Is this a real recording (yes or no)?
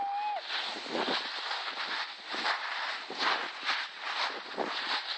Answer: yes